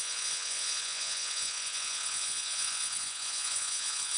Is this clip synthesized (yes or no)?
yes